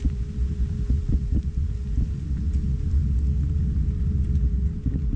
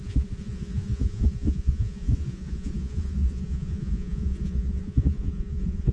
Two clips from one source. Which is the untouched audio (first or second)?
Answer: first